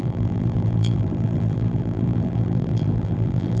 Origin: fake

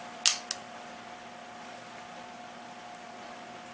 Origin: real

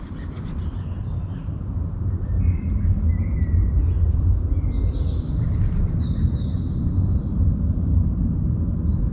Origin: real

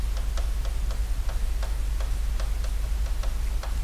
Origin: real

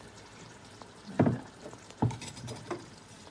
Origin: fake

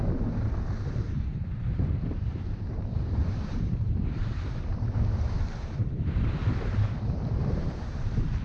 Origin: fake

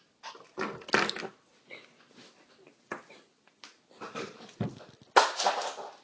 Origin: real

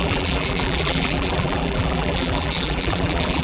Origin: fake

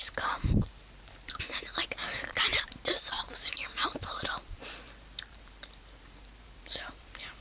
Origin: fake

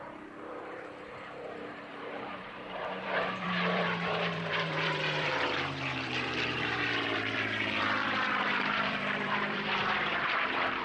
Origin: fake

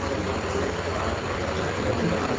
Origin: fake